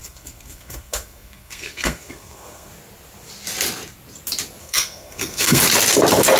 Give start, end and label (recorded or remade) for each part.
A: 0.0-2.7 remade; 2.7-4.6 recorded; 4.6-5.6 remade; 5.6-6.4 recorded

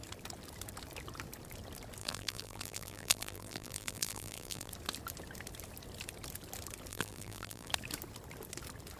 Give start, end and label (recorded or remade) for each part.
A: 0.0-2.0 recorded; 2.0-4.7 remade; 4.7-6.9 recorded; 6.9-7.7 remade; 7.7-9.0 recorded

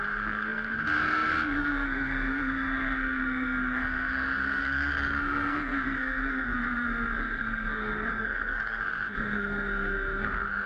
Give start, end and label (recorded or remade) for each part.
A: 0.0-10.7 remade

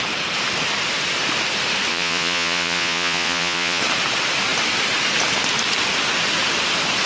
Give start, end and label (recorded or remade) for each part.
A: 0.0-1.9 recorded; 1.9-3.8 remade; 3.8-7.1 recorded

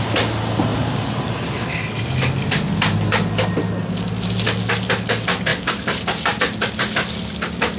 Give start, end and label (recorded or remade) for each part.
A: 0.0-0.7 recorded; 0.7-1.7 remade; 1.7-5.5 recorded; 5.5-6.4 remade; 6.4-7.8 recorded

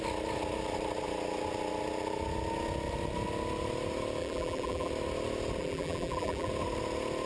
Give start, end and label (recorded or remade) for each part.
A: 0.0-4.2 recorded; 4.2-4.9 remade; 4.9-5.6 recorded; 5.6-6.5 remade; 6.5-7.3 recorded

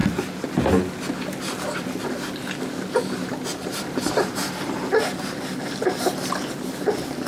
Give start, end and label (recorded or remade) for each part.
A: 0.0-3.5 recorded; 3.5-5.4 remade; 5.4-7.3 recorded

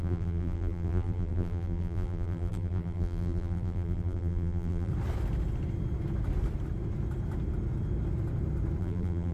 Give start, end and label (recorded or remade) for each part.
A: 0.0-4.9 remade; 4.9-8.8 recorded; 8.8-9.3 remade